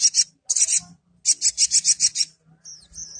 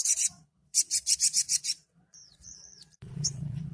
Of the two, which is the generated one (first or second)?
second